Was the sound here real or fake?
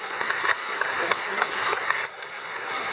fake